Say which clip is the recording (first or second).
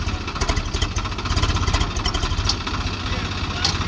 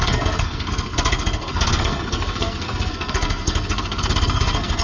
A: first